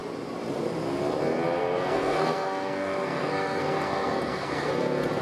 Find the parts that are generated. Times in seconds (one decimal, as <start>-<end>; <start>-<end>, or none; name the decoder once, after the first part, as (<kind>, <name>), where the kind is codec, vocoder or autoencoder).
1.6-4.7 (codec, SNAC)